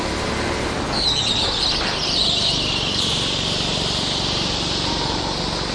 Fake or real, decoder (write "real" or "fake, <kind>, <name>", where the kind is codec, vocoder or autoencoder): real